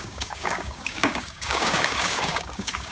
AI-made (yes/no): yes